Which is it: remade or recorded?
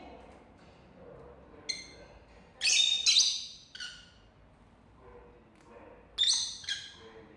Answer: recorded